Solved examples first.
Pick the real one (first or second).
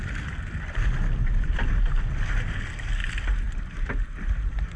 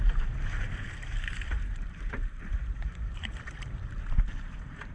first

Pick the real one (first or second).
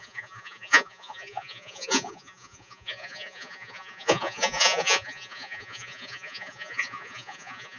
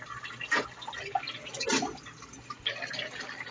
second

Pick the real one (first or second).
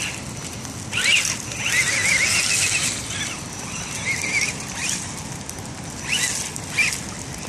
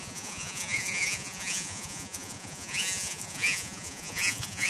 first